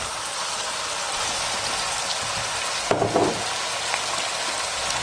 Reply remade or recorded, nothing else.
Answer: recorded